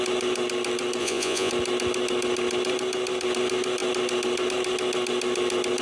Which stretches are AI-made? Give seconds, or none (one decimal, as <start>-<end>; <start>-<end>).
1.0-1.5